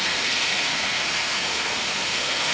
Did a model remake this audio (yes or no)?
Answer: yes